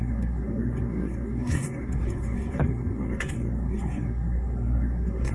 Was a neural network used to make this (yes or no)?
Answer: yes